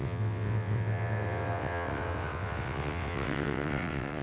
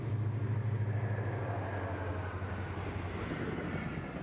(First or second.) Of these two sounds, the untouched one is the second